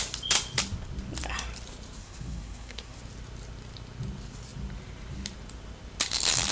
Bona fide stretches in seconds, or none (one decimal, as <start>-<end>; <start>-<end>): 0.0-2.0; 3.0-6.5